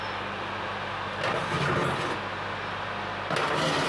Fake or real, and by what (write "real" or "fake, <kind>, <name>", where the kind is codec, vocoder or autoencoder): real